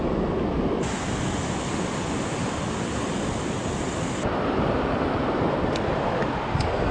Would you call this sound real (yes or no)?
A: yes